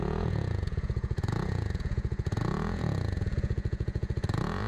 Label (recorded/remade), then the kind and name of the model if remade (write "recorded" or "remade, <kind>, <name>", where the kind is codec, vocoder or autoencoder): remade, vocoder, Vocos